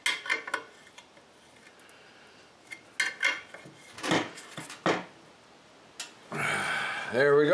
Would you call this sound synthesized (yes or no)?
no